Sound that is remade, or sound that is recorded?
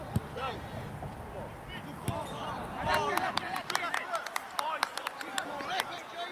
recorded